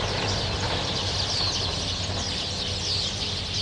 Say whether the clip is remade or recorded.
recorded